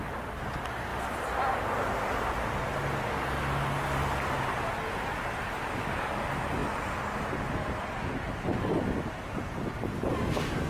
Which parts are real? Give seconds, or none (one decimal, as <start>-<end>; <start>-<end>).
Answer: 0.0-0.9; 1.5-10.7